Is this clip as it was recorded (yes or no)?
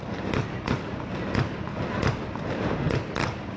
yes